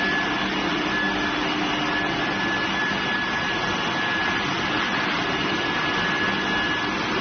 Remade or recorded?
recorded